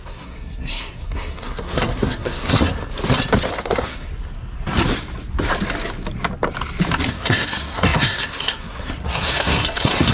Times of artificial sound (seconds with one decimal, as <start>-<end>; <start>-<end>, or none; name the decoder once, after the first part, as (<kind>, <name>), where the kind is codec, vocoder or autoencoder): 0.0-2.8 (codec, SNAC); 3.5-4.1; 7.1-10.1